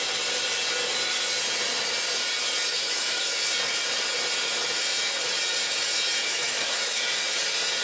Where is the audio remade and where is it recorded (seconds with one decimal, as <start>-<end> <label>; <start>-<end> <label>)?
0.0-2.7 recorded; 2.7-3.4 remade; 3.4-6.2 recorded; 6.2-7.0 remade; 7.0-7.8 recorded

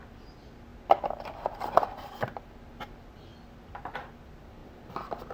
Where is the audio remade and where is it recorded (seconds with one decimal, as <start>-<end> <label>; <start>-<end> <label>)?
0.0-4.6 recorded; 4.6-5.3 remade

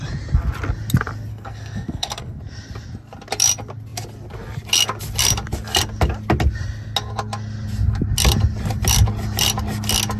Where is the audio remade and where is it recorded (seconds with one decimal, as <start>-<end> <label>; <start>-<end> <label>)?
0.0-1.3 recorded; 1.3-2.4 remade; 2.4-10.2 recorded